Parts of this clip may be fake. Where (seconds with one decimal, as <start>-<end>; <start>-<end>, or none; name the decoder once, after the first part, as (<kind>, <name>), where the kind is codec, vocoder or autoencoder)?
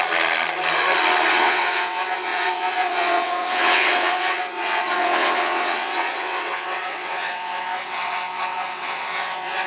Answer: 1.3-9.7 (vocoder, WaveNeXt)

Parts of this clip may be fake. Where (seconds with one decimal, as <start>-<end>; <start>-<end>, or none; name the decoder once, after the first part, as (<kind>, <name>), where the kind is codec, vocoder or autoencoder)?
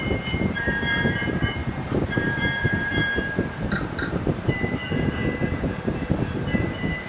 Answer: 0.0-7.1 (vocoder, BigVGAN v2)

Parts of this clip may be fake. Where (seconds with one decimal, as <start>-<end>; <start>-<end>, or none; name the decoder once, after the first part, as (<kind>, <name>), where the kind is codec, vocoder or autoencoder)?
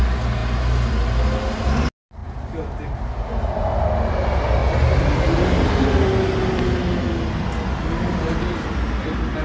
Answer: none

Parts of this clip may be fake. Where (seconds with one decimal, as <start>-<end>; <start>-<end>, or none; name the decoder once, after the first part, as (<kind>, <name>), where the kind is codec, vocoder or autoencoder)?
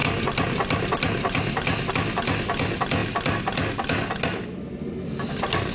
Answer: none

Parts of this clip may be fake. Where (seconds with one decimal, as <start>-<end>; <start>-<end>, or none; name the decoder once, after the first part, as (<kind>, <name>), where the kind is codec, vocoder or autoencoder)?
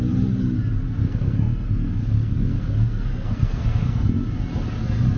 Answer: 1.0-4.1 (codec, SNAC)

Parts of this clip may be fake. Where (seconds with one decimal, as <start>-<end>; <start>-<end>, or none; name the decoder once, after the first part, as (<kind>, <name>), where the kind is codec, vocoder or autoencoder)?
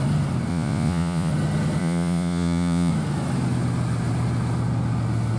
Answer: 0.5-1.3 (vocoder, Vocos); 1.8-2.9